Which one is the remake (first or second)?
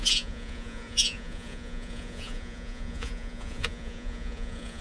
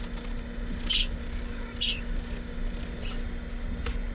first